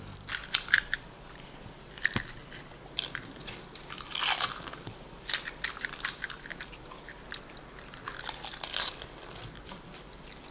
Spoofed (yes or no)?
no